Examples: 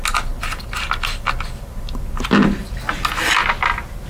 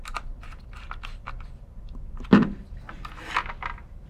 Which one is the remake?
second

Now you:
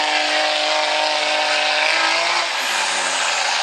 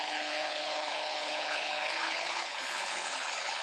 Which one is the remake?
second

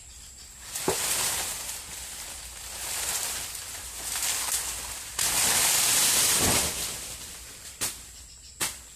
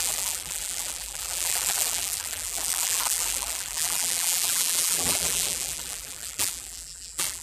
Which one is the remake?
second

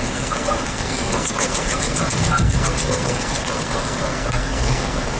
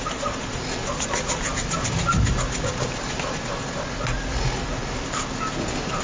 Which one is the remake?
first